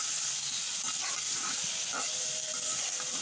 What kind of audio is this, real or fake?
real